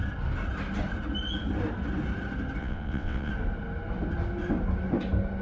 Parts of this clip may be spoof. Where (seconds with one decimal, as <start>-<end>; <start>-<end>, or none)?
2.6-3.3